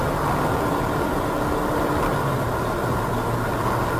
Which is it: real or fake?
real